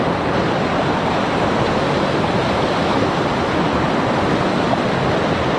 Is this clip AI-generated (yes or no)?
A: yes